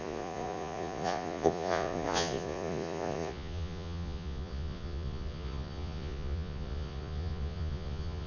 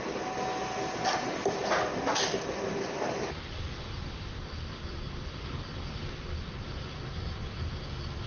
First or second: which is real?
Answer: second